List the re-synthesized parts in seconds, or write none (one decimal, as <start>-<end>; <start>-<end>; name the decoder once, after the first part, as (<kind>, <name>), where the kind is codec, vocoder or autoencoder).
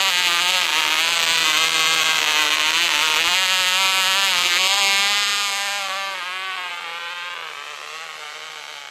none